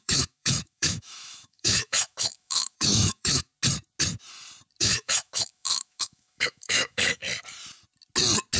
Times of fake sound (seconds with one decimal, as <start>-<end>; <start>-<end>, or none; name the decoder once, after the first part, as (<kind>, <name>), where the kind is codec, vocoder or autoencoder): 0.0-3.5 (autoencoder, DAC-VAE); 4.8-7.2